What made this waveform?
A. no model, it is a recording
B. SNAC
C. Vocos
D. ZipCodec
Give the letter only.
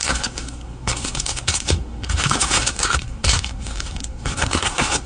B